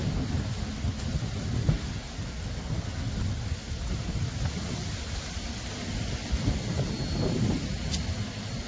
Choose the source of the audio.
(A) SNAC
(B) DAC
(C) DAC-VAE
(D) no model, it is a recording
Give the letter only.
D